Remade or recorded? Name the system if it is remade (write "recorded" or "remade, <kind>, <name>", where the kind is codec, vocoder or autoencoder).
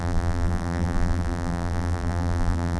remade, vocoder, BigVGAN v2